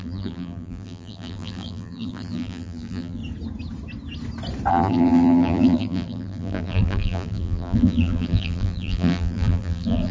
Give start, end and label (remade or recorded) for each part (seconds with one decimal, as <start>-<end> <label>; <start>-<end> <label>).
0.0-3.2 remade; 3.2-4.7 recorded; 4.7-10.1 remade